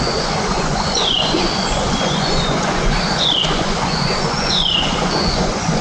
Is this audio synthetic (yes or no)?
yes